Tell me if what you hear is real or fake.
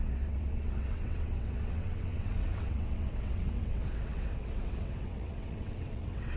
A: fake